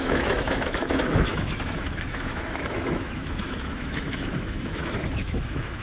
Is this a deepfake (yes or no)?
yes